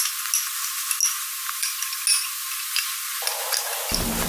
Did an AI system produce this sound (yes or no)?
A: no